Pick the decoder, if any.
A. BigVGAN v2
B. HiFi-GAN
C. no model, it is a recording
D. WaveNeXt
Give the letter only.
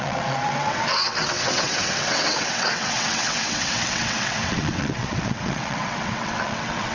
D